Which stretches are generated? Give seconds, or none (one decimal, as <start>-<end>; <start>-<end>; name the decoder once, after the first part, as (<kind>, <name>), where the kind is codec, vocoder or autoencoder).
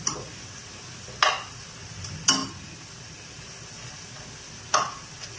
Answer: none